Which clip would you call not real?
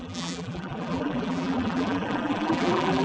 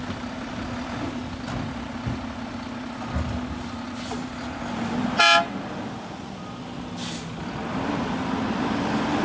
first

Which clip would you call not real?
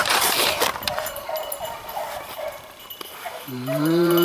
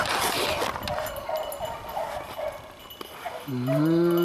first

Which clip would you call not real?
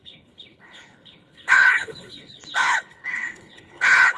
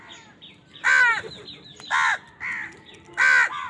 first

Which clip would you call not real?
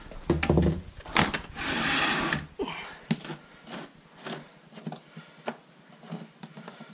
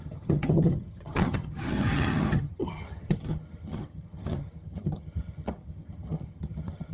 second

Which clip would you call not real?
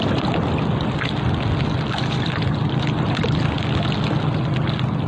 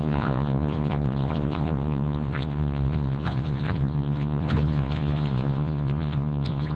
second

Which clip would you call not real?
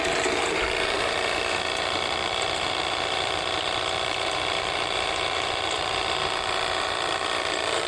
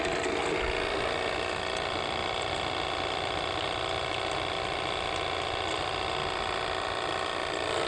first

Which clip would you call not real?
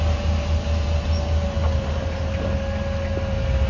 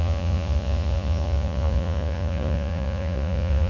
second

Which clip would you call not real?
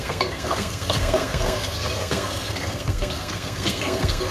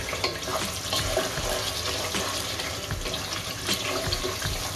first